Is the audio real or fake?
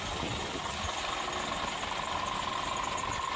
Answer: real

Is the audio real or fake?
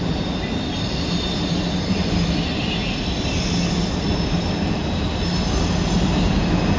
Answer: real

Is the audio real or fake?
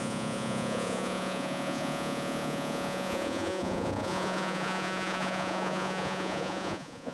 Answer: fake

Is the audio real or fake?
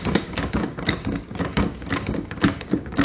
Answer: fake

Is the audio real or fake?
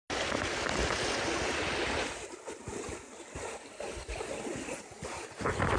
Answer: real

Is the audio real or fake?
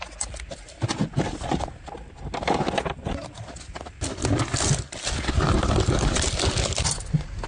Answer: real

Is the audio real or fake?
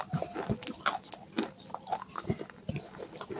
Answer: real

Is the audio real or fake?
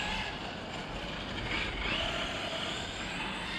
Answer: fake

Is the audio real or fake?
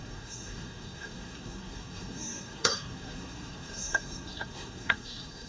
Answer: fake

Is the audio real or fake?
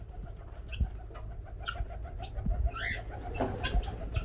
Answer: real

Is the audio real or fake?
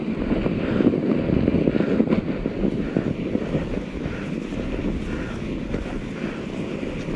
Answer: real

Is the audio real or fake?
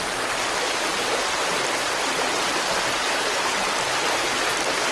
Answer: real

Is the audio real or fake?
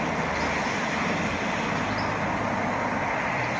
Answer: fake